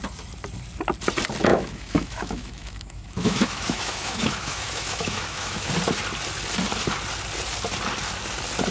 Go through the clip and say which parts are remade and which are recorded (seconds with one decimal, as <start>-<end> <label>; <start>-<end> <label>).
0.0-1.5 recorded; 1.5-5.7 remade; 5.7-8.7 recorded